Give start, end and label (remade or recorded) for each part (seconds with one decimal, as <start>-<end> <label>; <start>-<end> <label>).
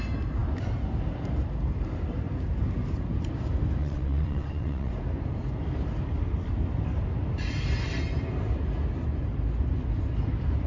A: 0.0-3.8 recorded; 3.8-4.9 remade; 4.9-10.7 recorded